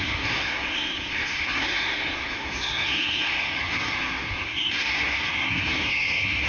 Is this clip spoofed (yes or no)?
yes